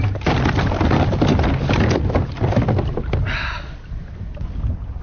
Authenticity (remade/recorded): recorded